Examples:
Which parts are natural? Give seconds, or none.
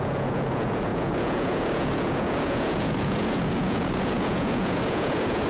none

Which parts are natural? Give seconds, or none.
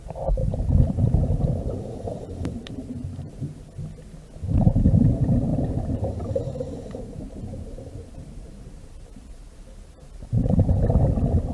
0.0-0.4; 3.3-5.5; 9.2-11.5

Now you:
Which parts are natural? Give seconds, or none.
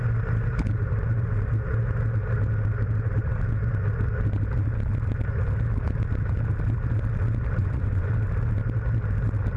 0.0-7.6; 8.1-9.6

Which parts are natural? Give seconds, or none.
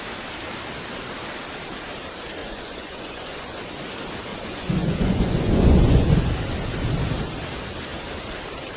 0.0-2.4; 3.7-4.3; 6.3-8.8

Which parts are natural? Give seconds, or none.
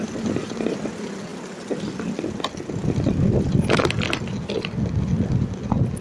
0.0-6.0